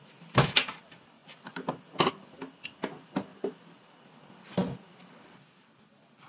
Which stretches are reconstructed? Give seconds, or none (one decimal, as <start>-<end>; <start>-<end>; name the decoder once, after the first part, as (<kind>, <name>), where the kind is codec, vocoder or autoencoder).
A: none